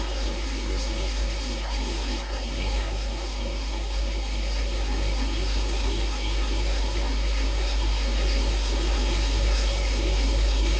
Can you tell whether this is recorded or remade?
remade